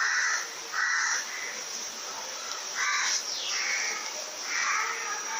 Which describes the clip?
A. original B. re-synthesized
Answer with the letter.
A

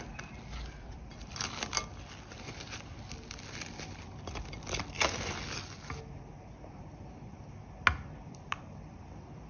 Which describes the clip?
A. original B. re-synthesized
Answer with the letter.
A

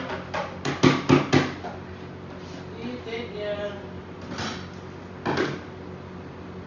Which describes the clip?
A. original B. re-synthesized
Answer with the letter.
A